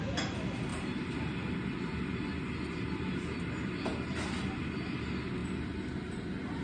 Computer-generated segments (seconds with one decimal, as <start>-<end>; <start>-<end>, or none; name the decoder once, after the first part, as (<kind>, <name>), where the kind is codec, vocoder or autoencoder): 0.7-2.2 (vocoder, BigVGAN v2)